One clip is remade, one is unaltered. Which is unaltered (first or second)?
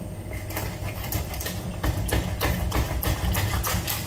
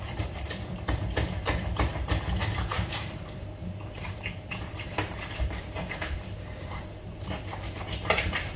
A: first